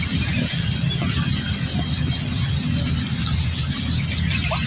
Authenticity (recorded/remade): recorded